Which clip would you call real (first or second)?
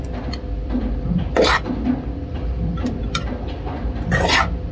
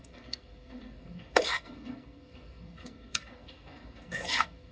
first